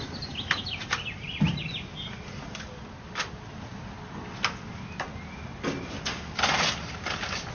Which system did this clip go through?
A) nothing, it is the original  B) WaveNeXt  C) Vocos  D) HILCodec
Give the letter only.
A